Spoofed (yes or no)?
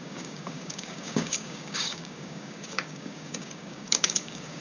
yes